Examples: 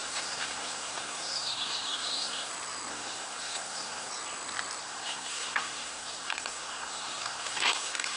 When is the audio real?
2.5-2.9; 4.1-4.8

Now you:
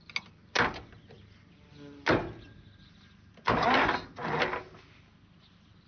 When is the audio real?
0.0-5.9